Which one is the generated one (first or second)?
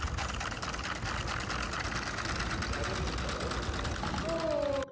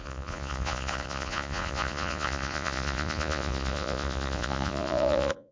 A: second